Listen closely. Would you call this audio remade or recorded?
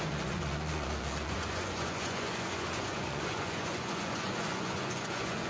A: remade